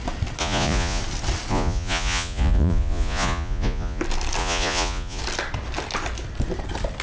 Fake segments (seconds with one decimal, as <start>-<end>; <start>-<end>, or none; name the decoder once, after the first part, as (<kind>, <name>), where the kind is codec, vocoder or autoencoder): 0.4-1.0 (vocoder, Vocos); 1.5-4.0; 4.4-5.2